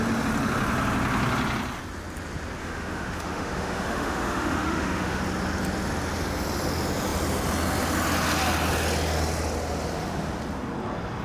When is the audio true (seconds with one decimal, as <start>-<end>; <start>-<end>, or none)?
0.0-2.6; 5.2-11.2

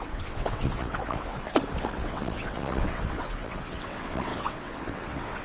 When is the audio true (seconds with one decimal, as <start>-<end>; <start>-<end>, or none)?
1.3-1.8

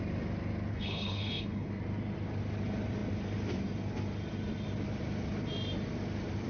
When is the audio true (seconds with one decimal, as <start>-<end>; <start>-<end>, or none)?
0.0-0.7; 1.7-6.5

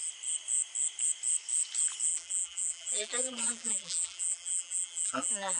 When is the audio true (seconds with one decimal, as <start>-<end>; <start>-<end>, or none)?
0.0-2.1

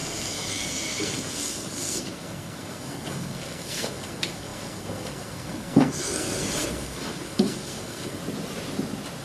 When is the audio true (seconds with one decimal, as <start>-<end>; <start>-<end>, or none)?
8.2-9.2